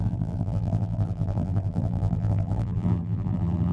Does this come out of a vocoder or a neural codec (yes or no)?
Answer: yes